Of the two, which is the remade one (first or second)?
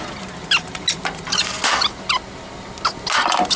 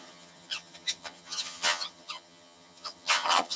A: second